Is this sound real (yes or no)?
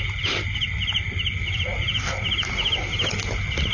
yes